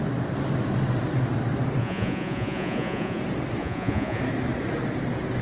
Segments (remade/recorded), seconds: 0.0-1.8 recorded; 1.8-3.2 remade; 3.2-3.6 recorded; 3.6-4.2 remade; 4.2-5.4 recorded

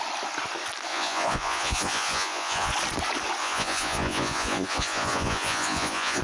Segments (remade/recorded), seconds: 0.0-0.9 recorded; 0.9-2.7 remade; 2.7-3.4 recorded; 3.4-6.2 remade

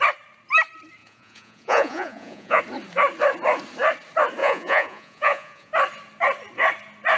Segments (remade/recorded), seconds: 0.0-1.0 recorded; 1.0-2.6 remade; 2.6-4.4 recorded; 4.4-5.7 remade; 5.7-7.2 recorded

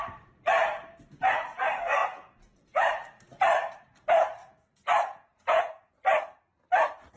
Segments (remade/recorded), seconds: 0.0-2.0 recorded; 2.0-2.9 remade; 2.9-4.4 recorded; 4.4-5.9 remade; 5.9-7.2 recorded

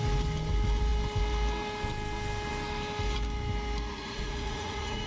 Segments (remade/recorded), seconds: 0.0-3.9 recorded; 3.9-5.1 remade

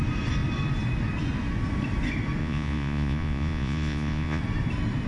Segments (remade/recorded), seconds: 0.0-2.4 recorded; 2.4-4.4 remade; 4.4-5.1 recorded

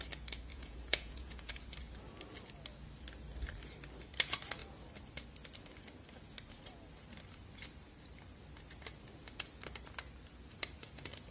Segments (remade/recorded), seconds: 0.0-0.5 recorded; 0.5-1.6 remade; 1.6-11.3 recorded